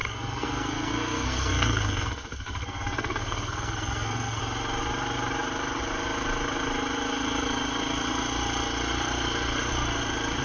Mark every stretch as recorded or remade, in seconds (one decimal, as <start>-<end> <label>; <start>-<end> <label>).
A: 0.0-4.4 remade; 4.4-10.4 recorded